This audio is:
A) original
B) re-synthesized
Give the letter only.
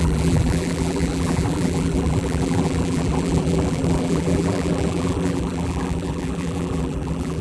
B